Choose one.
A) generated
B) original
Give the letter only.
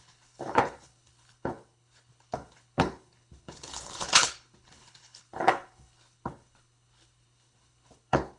A